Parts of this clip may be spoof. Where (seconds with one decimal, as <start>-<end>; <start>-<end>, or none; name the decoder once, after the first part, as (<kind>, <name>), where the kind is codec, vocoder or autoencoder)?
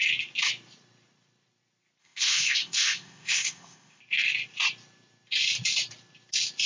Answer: 2.0-4.0 (codec, ZipCodec)